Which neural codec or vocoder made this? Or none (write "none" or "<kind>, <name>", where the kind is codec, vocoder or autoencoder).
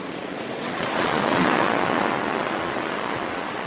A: vocoder, Vocos